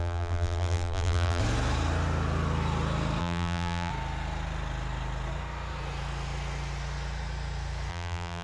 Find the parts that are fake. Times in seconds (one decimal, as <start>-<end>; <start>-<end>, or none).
0.0-1.4; 3.2-3.9; 7.9-8.4